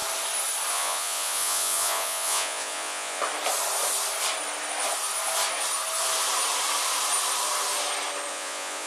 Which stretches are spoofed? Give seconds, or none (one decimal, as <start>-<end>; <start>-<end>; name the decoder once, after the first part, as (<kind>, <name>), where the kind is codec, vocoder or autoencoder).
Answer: 0.7-3.2 (vocoder, Vocos); 8.3-8.9